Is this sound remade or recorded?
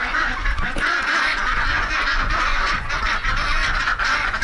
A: remade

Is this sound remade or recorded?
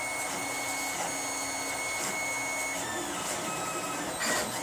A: recorded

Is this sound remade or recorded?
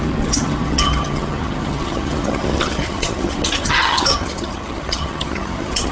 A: remade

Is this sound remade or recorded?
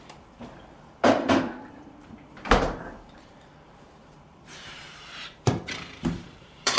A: remade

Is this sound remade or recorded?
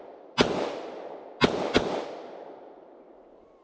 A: recorded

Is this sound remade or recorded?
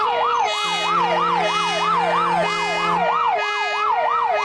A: recorded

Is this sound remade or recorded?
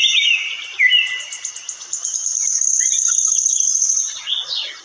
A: recorded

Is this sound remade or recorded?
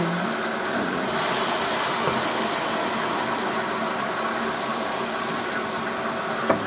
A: recorded